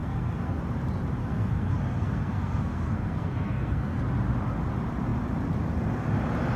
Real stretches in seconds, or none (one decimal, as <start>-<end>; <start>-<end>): 0.6-1.2; 4.0-6.6